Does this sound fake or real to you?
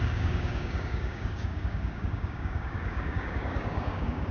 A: fake